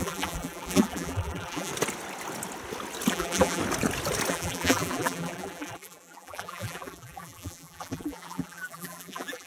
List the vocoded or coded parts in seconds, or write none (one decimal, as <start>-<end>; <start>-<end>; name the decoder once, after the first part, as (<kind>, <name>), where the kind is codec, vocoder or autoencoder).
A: 0.0-1.7 (vocoder, BigVGAN v2); 3.1-3.6; 4.3-9.5